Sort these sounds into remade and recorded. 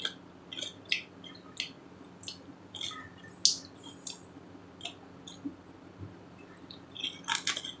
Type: recorded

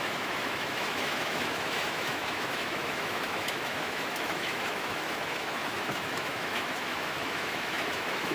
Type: remade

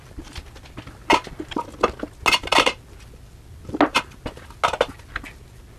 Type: recorded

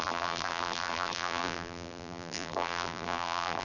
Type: remade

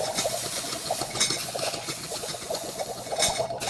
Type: remade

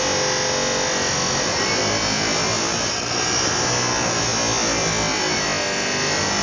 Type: recorded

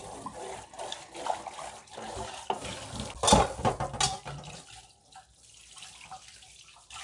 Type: recorded